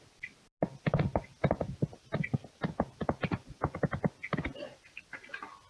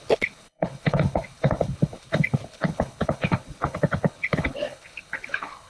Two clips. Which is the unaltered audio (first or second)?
first